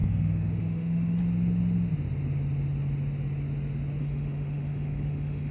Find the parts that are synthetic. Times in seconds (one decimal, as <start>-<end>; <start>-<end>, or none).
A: 0.0-1.2; 4.0-5.5